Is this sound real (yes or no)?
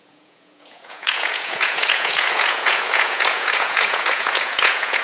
no